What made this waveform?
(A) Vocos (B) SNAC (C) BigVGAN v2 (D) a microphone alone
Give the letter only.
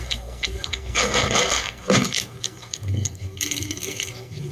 B